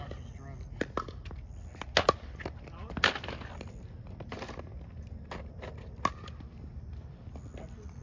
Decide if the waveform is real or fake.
real